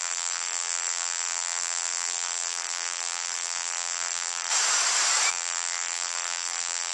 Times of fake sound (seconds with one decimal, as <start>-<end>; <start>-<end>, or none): 0.0-4.5; 5.3-6.9